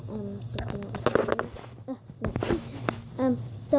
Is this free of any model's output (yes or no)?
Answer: yes